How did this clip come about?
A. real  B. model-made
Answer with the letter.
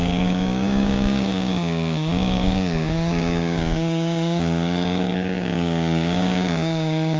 B